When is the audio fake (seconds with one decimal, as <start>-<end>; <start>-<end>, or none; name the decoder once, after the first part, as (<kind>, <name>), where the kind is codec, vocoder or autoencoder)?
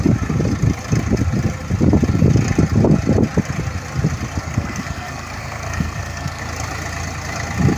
4.4-6.4 (codec, SNAC)